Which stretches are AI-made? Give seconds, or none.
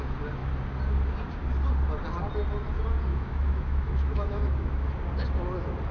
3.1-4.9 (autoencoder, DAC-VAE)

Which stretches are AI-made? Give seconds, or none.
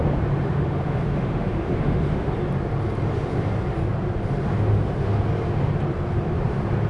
0.4-2.3 (autoencoder, DAC-VAE); 4.7-5.2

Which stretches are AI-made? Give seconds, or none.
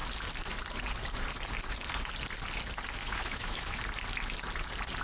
3.0-3.8 (autoencoder, DAC-VAE)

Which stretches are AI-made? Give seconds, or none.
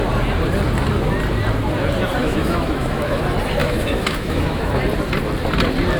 2.2-3.2 (autoencoder, DAC-VAE); 3.6-4.8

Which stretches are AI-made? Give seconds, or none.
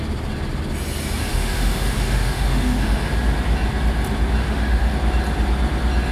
1.3-3.1 (autoencoder, DAC-VAE); 4.4-4.9